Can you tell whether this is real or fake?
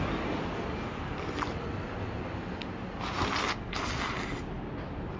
real